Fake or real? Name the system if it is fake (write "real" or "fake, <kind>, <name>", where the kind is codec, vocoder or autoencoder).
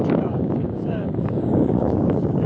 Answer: fake, codec, DAC